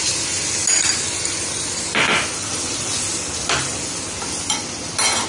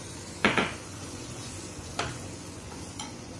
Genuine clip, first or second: first